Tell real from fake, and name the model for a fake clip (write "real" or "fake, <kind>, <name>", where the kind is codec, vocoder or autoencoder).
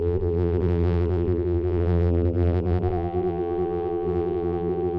fake, vocoder, BigVGAN v2